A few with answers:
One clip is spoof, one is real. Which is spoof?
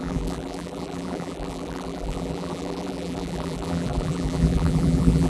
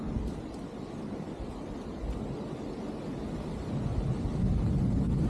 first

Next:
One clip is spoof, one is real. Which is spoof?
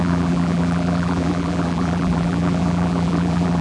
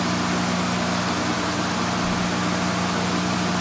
first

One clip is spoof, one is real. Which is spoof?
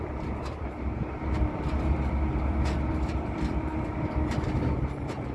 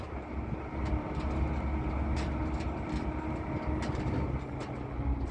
first